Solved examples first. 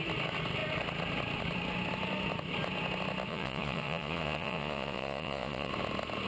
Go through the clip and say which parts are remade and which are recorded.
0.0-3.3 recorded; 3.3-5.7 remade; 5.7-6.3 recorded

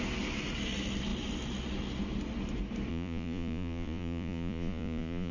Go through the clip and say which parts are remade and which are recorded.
0.0-2.9 recorded; 2.9-5.3 remade

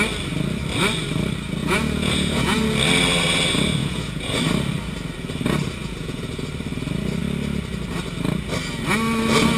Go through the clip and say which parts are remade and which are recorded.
0.0-1.6 recorded; 1.6-2.6 remade; 2.6-3.8 recorded; 3.8-4.4 remade; 4.4-5.8 recorded; 5.8-6.4 remade; 6.4-9.6 recorded

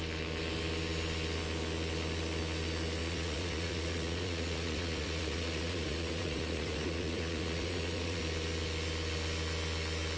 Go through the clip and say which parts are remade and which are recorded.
0.0-3.0 recorded; 3.0-8.2 remade; 8.2-10.2 recorded

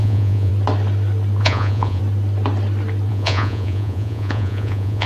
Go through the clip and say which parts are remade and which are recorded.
0.0-0.5 remade; 0.5-1.4 recorded; 1.4-2.0 remade; 2.0-3.1 recorded; 3.1-5.1 remade

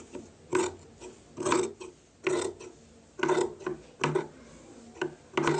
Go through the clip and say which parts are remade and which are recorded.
0.0-5.6 recorded